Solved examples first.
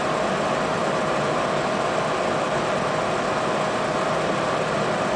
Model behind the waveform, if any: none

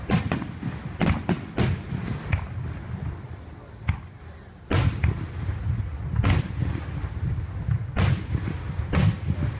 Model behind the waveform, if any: none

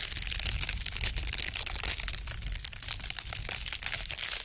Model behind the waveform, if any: none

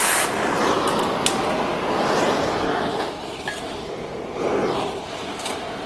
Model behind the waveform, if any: none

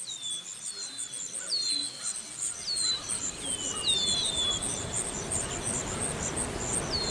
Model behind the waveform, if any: none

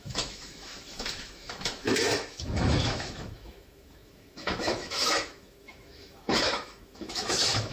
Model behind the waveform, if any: autoencoder, DAC-VAE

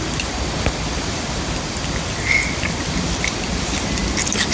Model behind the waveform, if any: none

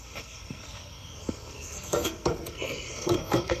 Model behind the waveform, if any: codec, SNAC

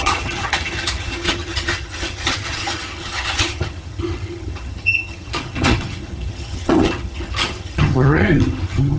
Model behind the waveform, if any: vocoder, HiFi-GAN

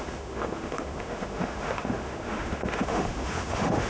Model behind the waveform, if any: autoencoder, DAC-VAE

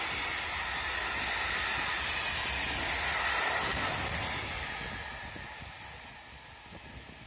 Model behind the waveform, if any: none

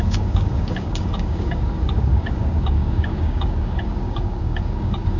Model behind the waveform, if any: codec, DAC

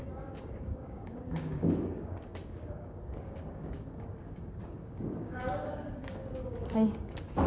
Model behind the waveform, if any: codec, DAC